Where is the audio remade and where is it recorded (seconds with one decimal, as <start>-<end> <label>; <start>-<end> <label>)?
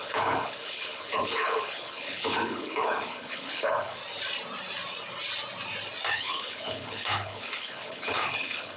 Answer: 0.0-4.0 remade; 4.0-6.1 recorded; 6.1-8.8 remade